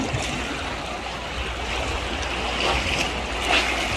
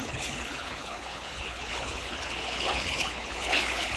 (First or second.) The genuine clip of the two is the first